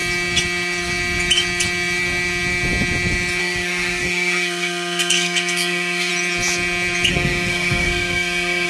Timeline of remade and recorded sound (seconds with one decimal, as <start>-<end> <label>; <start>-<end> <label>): 0.0-3.4 recorded; 3.4-6.1 remade; 6.1-7.1 recorded; 7.1-8.7 remade